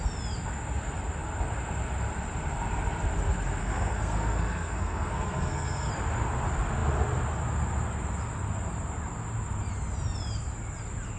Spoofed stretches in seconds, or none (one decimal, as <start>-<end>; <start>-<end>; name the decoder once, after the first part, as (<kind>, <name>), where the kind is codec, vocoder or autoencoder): 3.6-5.9 (codec, SNAC)

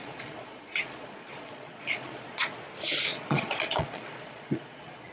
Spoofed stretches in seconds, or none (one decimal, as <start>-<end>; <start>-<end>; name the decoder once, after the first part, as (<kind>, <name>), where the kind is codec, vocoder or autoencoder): 0.0-2.6 (vocoder, Vocos); 3.1-5.1

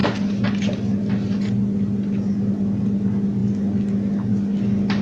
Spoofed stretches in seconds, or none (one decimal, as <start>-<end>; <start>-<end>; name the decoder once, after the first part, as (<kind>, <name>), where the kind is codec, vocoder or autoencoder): none

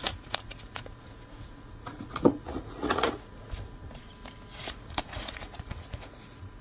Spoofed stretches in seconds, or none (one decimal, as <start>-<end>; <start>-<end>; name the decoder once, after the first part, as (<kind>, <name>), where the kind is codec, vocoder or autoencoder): 0.0-4.1 (vocoder, Vocos); 4.6-6.6

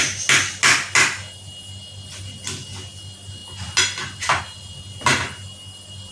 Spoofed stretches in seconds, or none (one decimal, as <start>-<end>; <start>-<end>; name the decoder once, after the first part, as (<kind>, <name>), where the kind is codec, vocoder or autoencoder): none

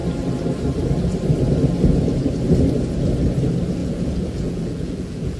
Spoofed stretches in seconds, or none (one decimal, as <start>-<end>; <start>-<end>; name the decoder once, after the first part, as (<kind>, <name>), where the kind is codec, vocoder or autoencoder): 3.8-5.4 (vocoder, Vocos)

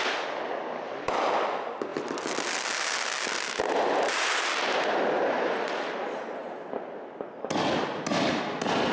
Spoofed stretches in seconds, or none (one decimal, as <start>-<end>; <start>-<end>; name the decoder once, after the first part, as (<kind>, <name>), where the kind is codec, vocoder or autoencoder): 1.9-3.5 (vocoder, BigVGAN v2)

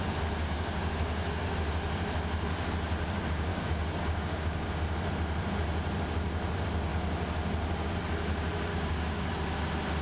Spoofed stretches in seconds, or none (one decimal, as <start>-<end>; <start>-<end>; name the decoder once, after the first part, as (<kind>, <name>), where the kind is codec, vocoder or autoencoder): 0.4-1.7 (codec, DAC); 3.5-4.7; 8.7-9.3